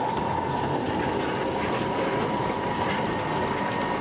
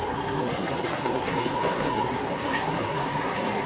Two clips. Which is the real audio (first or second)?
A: first